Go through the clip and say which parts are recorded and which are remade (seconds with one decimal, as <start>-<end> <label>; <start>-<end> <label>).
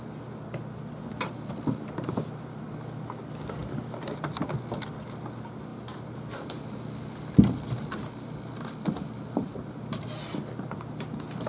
0.0-5.7 recorded; 5.7-6.6 remade; 6.6-9.4 recorded; 9.4-10.0 remade; 10.0-11.5 recorded